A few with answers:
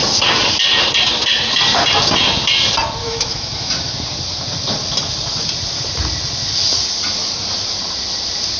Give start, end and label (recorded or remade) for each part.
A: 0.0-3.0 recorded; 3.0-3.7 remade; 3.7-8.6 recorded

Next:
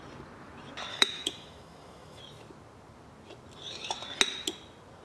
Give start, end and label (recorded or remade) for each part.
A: 0.0-0.9 recorded; 0.9-2.2 remade; 2.2-5.0 recorded

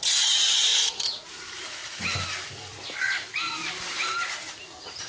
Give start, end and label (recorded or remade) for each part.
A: 0.0-1.8 remade; 1.8-5.1 recorded

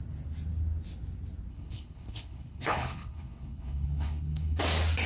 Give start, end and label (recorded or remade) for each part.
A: 0.0-1.5 recorded; 1.5-4.6 remade; 4.6-5.1 recorded